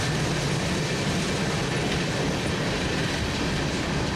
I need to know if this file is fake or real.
real